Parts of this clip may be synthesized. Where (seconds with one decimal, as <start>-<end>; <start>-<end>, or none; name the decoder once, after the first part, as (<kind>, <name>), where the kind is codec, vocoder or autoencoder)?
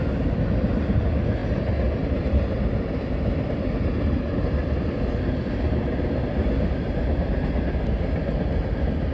none